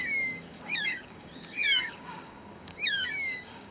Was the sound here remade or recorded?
remade